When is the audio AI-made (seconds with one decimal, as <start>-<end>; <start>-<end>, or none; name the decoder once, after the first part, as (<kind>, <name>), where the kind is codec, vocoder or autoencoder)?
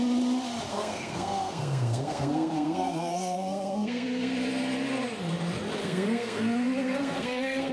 0.7-4.3 (codec, SNAC); 5.8-7.7